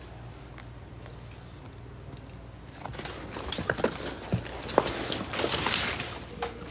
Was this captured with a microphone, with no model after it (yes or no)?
yes